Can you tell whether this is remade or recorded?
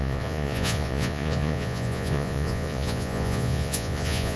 remade